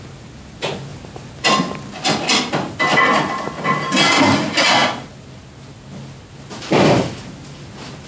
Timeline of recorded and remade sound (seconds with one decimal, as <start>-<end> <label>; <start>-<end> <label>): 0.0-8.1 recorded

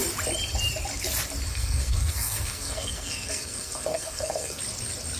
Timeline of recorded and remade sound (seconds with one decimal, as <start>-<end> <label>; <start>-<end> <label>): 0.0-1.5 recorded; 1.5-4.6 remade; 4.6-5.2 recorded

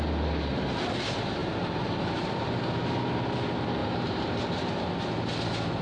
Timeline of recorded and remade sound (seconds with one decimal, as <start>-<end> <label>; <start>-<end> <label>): 0.0-1.4 recorded; 1.4-2.3 remade; 2.3-5.8 recorded

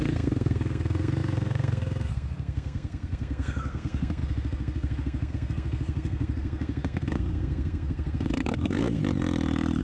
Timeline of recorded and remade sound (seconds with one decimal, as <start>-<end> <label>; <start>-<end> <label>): 0.0-9.0 remade; 9.0-9.8 recorded

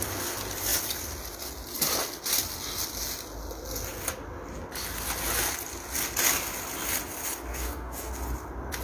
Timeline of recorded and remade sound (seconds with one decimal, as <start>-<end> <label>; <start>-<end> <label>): 0.0-7.5 recorded; 7.5-8.1 remade; 8.1-8.8 recorded

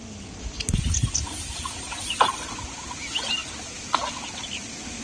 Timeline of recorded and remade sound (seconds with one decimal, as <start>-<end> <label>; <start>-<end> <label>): 0.0-5.0 recorded